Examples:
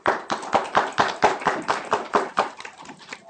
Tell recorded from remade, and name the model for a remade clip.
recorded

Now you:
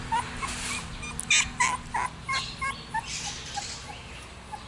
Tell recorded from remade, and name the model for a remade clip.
recorded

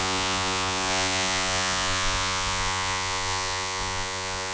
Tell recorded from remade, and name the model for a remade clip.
remade, vocoder, Vocos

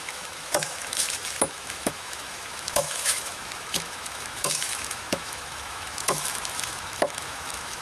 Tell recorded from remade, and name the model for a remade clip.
remade, autoencoder, DAC-VAE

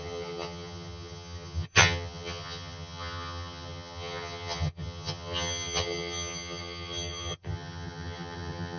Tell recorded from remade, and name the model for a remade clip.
remade, vocoder, HiFi-GAN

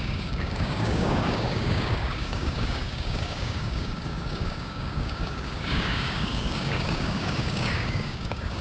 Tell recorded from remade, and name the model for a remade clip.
remade, codec, DAC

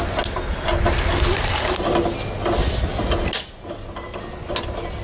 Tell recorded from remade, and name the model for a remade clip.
recorded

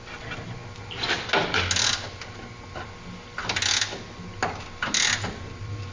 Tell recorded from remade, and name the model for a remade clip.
recorded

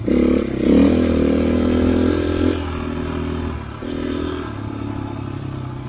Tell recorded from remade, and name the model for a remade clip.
recorded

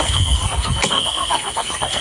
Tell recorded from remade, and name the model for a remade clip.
remade, codec, SNAC